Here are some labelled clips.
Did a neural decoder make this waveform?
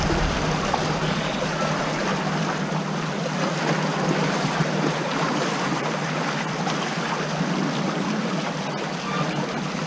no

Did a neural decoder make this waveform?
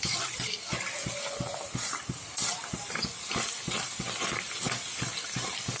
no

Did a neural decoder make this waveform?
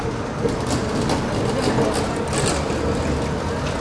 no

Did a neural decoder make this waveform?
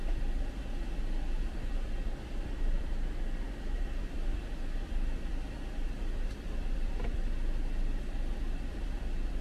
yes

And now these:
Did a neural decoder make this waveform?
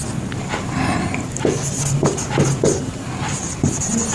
no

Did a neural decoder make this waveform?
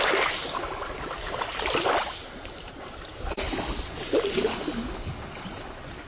no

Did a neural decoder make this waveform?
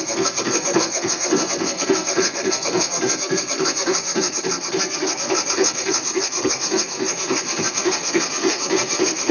yes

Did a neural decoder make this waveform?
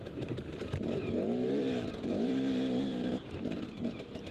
yes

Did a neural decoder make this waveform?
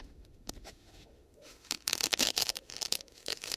yes